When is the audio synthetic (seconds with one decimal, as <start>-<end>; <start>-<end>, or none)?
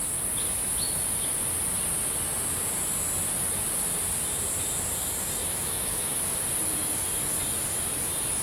5.4-6.2